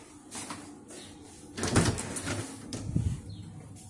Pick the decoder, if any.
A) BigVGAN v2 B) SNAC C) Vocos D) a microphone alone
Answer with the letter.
D